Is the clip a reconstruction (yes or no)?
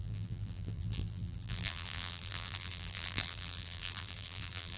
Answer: yes